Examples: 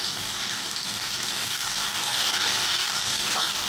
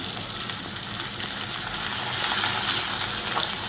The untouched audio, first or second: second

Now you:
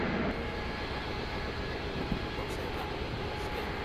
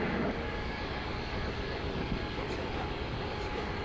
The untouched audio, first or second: first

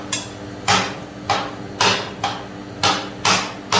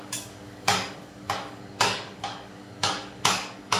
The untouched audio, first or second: first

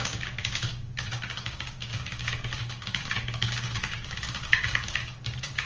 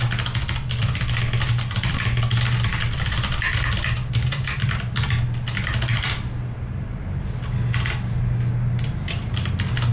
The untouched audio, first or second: second